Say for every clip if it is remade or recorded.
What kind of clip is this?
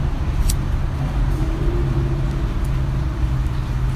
recorded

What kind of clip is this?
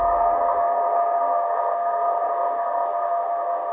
remade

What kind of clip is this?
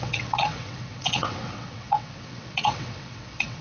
remade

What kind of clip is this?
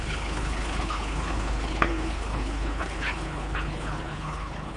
remade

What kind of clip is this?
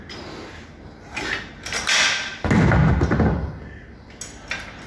recorded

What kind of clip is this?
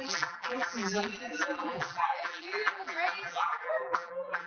remade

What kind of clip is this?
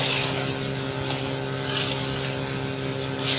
recorded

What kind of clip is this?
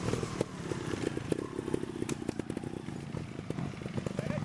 recorded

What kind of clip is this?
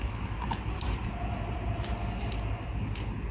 recorded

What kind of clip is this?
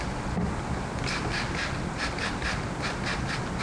recorded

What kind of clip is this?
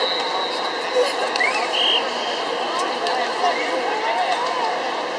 recorded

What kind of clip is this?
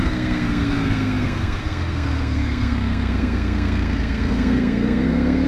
remade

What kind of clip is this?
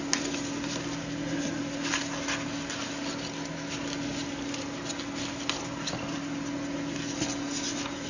recorded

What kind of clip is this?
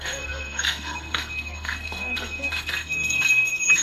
remade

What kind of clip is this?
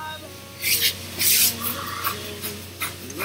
recorded